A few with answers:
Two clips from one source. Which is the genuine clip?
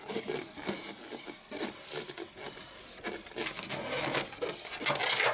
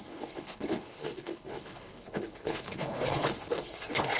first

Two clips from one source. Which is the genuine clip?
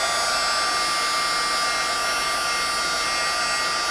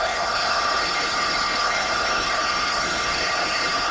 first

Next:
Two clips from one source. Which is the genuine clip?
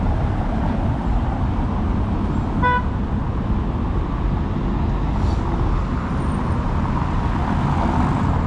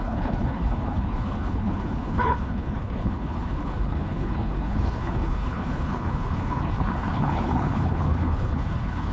first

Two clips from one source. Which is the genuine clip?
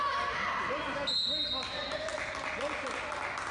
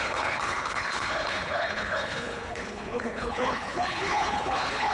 first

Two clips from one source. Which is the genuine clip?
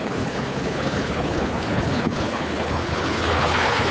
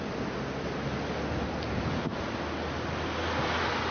second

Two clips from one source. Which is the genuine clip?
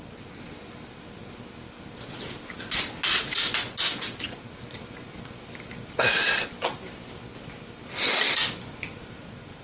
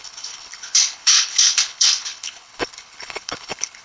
first